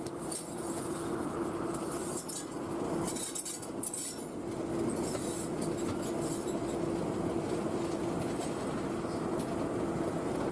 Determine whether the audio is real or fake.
real